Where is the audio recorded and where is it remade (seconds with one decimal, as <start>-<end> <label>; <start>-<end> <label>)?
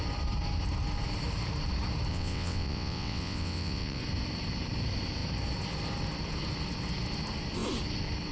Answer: 0.0-2.1 recorded; 2.1-4.0 remade; 4.0-8.3 recorded